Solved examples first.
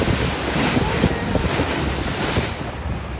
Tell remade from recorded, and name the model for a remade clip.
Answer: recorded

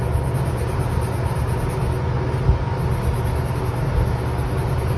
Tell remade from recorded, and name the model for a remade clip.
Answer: recorded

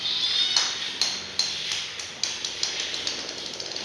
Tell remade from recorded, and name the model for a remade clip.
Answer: recorded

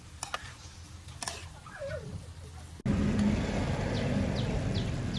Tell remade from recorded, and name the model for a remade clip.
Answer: recorded